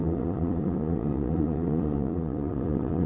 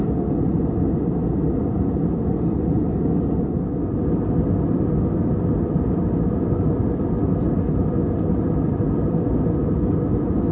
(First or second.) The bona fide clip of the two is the second